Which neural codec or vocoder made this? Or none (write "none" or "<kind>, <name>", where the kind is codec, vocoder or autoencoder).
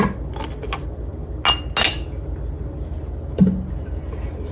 none